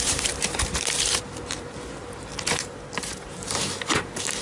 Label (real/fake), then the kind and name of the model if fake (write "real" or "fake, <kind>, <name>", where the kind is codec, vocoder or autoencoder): fake, vocoder, BigVGAN v2